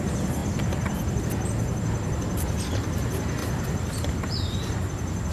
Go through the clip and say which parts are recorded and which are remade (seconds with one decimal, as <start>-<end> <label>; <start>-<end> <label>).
0.0-5.3 recorded